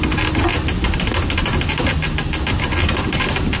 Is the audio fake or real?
real